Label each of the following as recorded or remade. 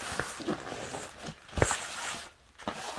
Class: recorded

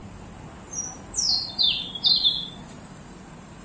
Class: recorded